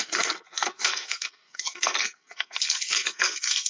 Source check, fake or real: fake